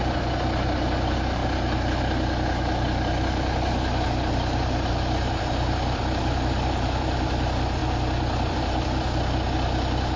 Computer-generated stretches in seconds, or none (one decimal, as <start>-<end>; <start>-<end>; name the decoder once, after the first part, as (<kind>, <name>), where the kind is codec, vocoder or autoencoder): 0.0-1.4 (vocoder, BigVGAN v2); 4.9-7.8; 8.5-10.2